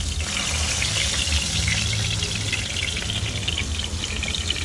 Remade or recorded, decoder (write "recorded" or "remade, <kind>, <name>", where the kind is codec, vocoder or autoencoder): recorded